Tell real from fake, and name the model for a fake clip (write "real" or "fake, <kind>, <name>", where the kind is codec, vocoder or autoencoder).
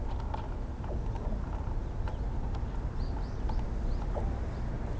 real